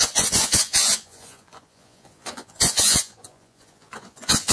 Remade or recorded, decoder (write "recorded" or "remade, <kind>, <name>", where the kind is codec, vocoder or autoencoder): remade, vocoder, Vocos